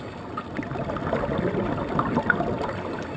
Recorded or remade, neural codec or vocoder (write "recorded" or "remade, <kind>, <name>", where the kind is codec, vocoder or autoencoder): recorded